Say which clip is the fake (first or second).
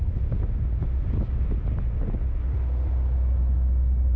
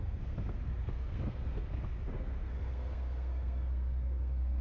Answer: second